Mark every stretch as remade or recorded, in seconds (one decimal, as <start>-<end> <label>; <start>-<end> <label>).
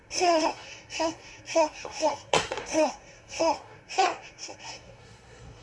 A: 0.0-5.6 remade